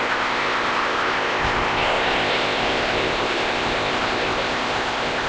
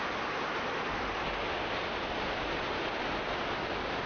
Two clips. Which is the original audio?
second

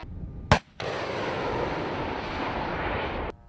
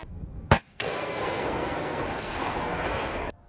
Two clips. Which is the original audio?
first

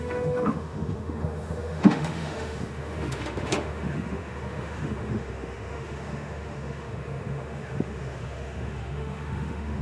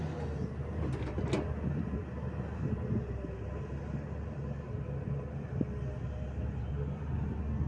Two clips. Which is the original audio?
second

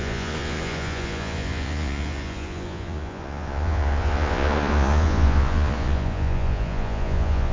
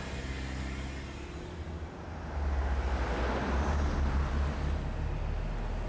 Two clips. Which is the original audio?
second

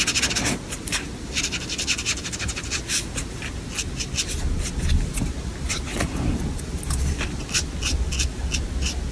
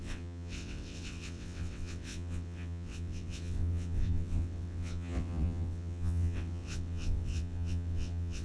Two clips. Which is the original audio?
first